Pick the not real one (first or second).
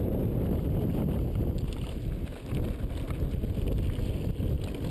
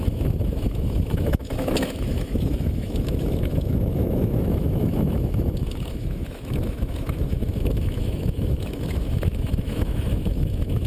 second